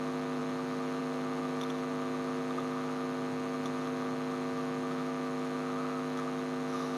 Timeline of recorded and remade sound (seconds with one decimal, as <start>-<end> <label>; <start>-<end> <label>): 0.0-7.0 recorded